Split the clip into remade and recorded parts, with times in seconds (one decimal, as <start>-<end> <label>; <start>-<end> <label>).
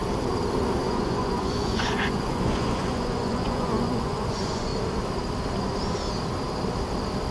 0.0-0.8 recorded; 0.8-4.7 remade; 4.7-7.3 recorded